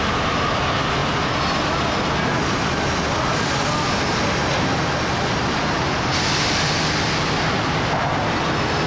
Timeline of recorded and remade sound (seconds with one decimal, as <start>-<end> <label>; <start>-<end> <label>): 0.0-8.9 recorded